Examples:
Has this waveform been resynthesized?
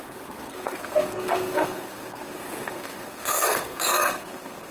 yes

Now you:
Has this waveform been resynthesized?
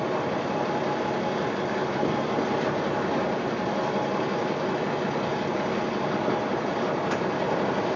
no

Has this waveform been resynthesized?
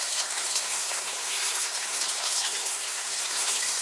yes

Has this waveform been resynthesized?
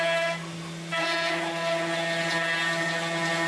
no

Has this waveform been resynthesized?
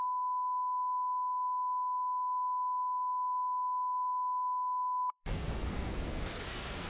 yes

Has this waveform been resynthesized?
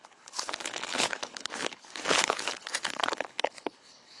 yes